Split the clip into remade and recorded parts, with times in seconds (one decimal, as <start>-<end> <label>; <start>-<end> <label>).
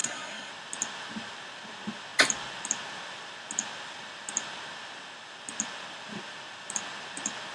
0.0-0.5 remade; 0.5-7.5 recorded